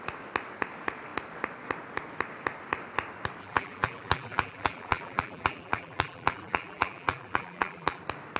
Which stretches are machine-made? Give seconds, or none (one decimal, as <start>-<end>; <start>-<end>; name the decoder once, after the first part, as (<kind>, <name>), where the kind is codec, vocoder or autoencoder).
3.4-8.0 (vocoder, BigVGAN v2)